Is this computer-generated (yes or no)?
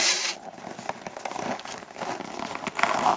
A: no